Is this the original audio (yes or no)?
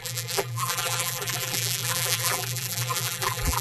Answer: no